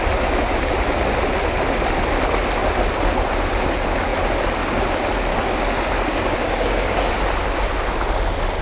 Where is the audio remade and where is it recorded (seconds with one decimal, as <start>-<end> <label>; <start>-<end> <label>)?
0.0-5.3 recorded; 5.3-7.1 remade; 7.1-8.6 recorded